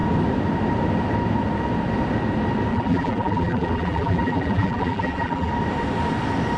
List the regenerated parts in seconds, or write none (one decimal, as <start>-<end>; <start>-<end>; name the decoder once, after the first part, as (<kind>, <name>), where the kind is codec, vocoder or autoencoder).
2.7-5.5 (vocoder, BigVGAN v2)